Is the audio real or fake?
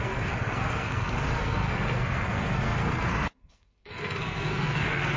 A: fake